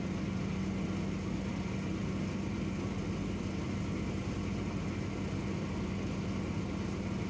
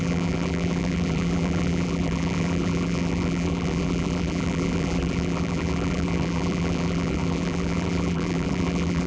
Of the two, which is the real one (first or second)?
first